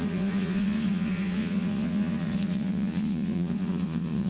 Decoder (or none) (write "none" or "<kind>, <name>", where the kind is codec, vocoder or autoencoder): vocoder, Vocos